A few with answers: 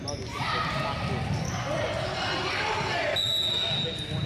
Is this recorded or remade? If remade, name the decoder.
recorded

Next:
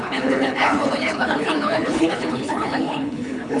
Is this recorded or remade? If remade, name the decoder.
remade, codec, HILCodec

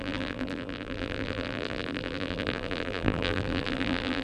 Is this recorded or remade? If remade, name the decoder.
remade, vocoder, BigVGAN v2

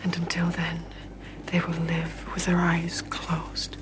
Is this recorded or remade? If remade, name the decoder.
recorded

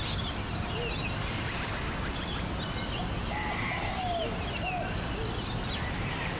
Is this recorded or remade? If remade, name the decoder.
recorded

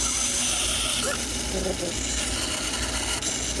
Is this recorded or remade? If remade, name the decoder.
recorded